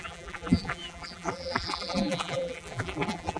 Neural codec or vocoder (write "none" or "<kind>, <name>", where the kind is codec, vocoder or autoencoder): vocoder, BigVGAN v2